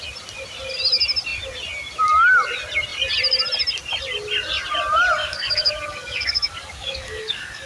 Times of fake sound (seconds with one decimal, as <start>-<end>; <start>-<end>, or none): 5.2-7.7